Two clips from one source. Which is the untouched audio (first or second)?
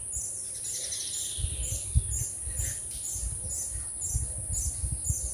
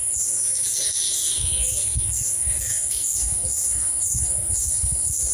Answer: first